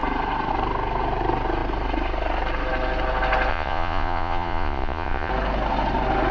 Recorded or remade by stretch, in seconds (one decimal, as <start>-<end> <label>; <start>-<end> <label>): 0.0-3.5 recorded; 3.5-5.3 remade; 5.3-6.3 recorded